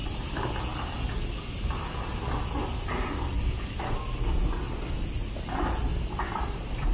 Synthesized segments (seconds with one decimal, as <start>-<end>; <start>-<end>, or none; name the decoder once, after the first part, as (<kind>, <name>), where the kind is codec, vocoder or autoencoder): 0.0-0.5 (vocoder, BigVGAN v2); 5.9-6.9